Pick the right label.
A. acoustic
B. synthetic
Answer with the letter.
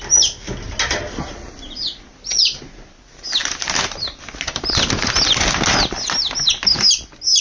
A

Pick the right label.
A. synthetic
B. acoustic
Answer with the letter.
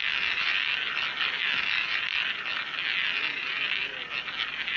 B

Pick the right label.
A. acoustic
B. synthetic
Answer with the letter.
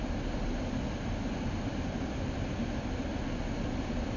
A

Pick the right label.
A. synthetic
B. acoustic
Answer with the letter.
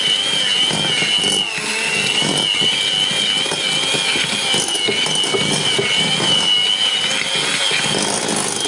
B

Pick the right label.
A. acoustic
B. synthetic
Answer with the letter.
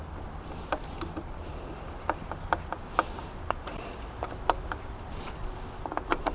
A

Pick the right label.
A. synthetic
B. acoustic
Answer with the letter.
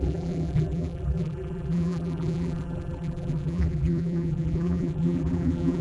A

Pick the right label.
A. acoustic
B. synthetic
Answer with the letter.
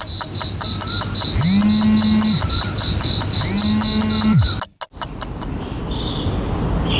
A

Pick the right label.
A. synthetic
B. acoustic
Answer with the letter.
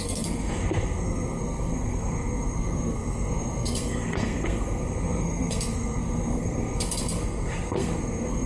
A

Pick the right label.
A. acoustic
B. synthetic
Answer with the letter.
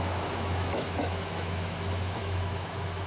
B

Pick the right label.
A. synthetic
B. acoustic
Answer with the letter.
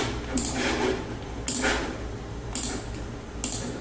B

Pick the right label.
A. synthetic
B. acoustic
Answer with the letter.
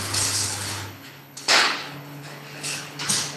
A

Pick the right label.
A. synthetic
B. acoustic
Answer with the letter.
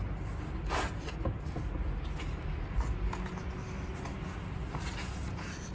B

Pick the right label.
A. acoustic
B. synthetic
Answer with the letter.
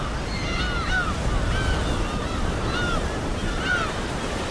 A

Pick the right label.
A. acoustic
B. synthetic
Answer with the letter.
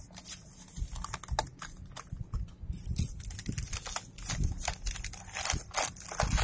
A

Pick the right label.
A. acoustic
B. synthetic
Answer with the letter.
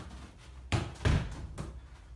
A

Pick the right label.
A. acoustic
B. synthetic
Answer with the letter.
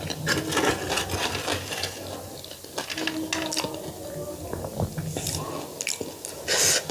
A